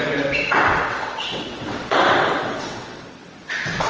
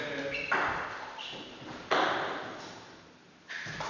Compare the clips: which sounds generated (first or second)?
first